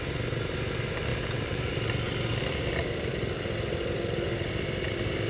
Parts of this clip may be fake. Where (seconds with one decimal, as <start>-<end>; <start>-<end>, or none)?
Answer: 1.1-3.1